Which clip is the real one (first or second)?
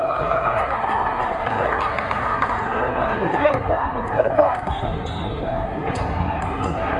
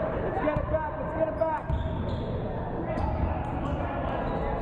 second